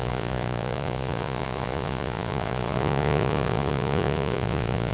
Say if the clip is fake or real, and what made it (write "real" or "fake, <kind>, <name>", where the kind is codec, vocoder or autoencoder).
fake, vocoder, Vocos